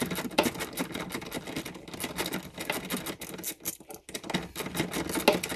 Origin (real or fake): real